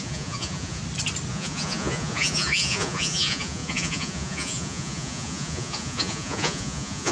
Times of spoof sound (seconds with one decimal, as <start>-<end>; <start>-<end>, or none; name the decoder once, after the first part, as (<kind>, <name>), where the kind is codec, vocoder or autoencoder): 0.0-0.8 (vocoder, Vocos); 1.3-7.1